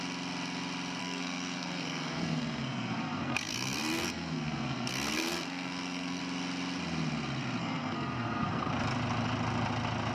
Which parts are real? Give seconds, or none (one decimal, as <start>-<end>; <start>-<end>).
0.0-1.0; 6.2-7.6; 8.7-10.1